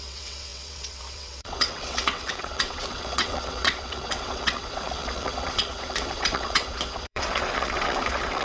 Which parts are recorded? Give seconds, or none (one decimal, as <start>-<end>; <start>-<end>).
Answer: none